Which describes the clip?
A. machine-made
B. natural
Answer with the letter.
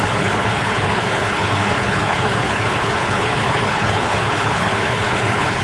A